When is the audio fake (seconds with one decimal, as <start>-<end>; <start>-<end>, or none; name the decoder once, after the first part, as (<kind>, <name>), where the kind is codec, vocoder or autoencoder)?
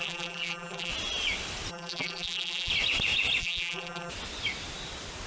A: 0.0-0.9 (vocoder, BigVGAN v2); 1.7-2.7; 3.4-4.1